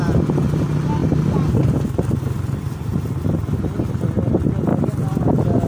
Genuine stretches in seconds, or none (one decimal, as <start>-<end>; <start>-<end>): 0.0-5.7